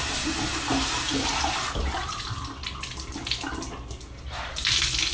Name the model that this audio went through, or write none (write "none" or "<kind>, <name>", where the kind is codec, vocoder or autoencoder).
none